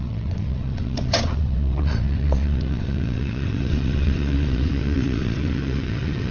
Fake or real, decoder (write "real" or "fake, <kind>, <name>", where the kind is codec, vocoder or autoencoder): fake, vocoder, WaveNeXt